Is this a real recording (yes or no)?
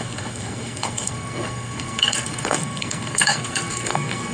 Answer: no